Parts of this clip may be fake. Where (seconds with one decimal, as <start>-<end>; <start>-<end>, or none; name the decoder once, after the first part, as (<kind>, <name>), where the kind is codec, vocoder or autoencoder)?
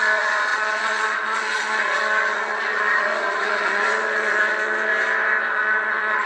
0.0-4.9 (vocoder, Vocos); 5.5-6.3